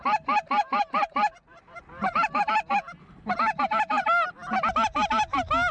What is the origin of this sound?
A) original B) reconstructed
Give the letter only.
A